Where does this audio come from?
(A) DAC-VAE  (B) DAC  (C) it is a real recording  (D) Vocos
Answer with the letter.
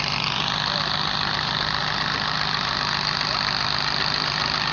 C